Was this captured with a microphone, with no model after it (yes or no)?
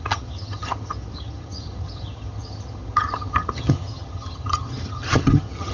no